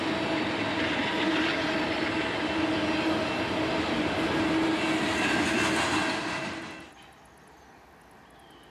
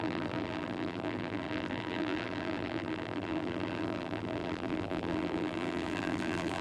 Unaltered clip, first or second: first